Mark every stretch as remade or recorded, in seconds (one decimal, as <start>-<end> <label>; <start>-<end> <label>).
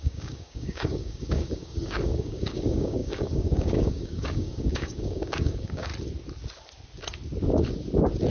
0.0-5.9 remade; 5.9-8.3 recorded